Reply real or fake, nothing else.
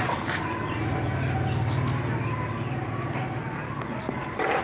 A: real